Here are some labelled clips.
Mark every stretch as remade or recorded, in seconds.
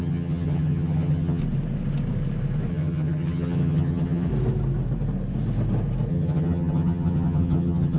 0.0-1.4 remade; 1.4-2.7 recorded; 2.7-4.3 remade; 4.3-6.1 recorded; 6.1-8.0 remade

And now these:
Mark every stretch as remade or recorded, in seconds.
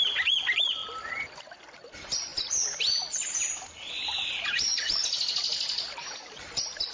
0.0-6.9 recorded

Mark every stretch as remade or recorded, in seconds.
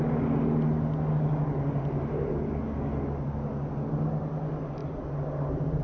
0.0-5.8 recorded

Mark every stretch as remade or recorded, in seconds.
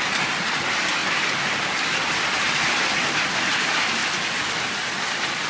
0.0-5.5 recorded